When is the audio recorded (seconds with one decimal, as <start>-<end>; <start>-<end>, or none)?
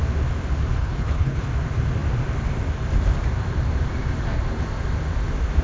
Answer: 0.0-0.8; 1.5-5.6